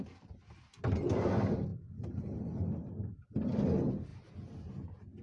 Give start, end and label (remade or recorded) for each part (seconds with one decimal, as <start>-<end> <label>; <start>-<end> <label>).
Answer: 0.0-1.7 recorded; 1.7-2.4 remade; 2.4-5.2 recorded